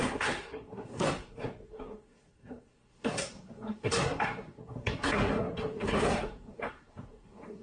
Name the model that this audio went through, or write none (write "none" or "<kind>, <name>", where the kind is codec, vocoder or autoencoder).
codec, SNAC